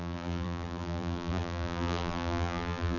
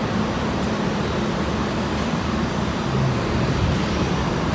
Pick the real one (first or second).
second